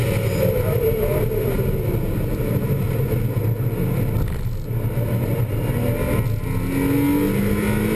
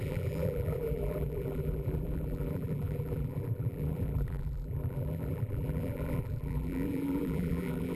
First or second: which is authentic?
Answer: first